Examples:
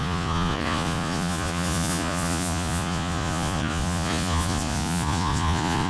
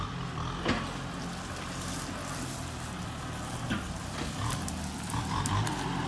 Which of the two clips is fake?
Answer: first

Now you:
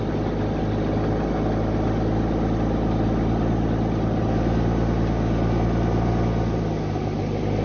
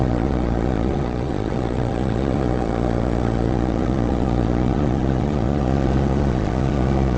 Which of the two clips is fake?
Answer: second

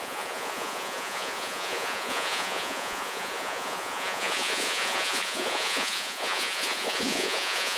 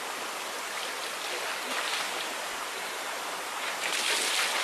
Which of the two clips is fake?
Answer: first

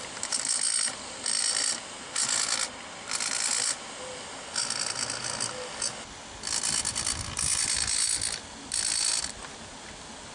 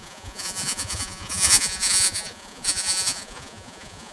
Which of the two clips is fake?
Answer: second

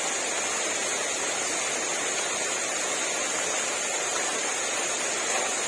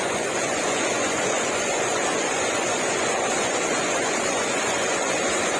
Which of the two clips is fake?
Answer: second